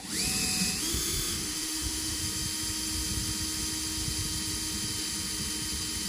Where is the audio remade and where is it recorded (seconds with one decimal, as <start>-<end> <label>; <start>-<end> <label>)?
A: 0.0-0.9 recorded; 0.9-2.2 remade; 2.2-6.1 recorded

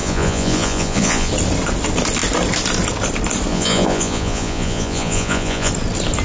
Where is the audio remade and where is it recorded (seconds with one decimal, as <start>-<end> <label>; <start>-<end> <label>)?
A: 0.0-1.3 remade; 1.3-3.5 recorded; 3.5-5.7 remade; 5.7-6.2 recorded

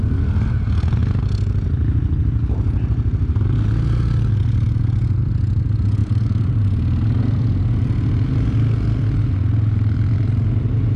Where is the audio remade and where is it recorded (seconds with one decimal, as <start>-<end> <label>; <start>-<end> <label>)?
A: 0.0-6.0 recorded; 6.0-6.7 remade; 6.7-11.0 recorded

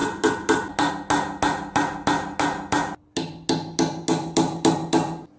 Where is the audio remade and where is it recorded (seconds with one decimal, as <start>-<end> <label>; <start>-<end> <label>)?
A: 0.0-5.4 recorded